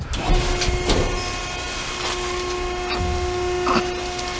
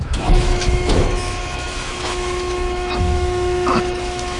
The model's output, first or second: second